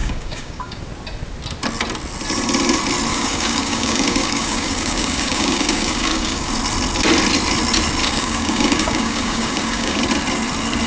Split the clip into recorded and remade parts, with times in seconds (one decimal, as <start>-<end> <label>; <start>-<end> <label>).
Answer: 0.0-0.8 remade; 0.8-3.1 recorded; 3.1-6.5 remade; 6.5-8.0 recorded; 8.0-10.0 remade; 10.0-10.9 recorded